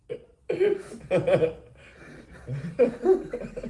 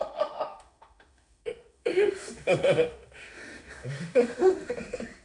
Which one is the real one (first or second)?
first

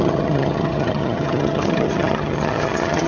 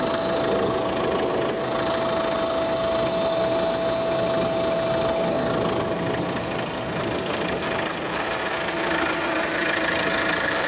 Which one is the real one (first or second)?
second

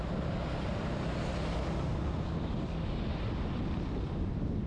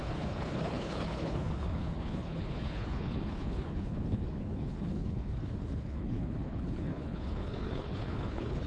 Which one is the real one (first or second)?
first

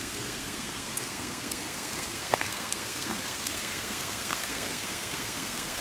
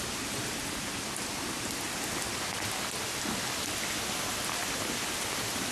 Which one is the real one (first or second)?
second